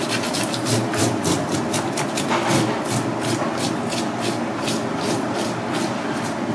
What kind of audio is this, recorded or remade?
recorded